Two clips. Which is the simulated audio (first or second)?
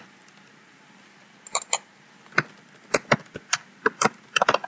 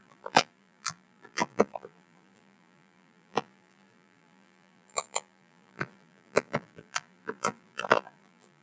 second